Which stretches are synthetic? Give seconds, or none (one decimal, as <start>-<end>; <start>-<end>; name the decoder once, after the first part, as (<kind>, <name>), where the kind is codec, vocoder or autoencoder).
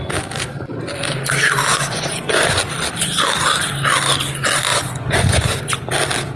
1.7-2.6 (vocoder, Vocos); 4.7-5.6